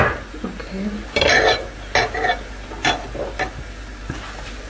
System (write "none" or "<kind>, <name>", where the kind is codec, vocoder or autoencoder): none